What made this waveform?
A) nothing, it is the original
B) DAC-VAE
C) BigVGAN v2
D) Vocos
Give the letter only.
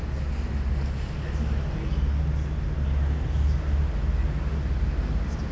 A